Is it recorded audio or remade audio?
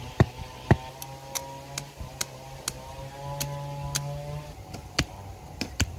recorded